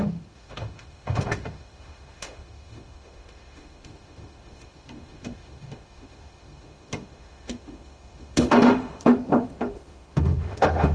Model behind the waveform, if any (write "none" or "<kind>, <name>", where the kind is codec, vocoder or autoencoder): autoencoder, DAC-VAE